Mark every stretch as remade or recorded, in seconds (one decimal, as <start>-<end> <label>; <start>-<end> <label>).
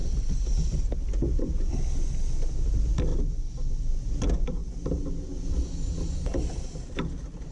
0.0-7.5 recorded